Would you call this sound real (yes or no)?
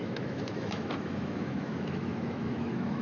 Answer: no